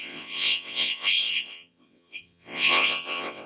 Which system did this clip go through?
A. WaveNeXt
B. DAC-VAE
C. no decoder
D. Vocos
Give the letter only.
A